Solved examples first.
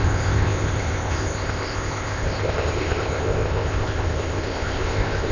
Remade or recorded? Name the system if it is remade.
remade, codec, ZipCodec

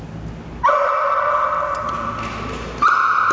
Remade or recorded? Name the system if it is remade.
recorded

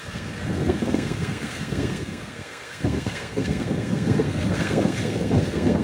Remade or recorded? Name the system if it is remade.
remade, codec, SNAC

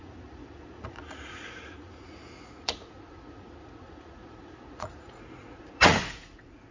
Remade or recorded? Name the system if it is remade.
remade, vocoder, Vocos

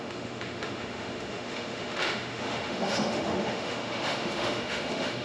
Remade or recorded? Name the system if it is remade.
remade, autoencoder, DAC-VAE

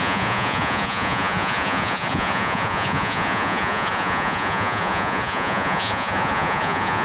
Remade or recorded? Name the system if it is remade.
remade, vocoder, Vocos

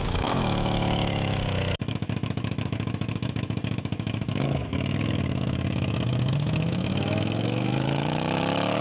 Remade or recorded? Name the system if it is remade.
remade, autoencoder, DAC-VAE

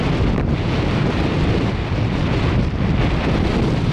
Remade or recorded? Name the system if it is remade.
recorded